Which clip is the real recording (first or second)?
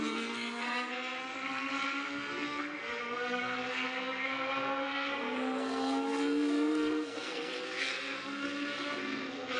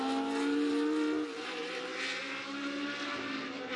second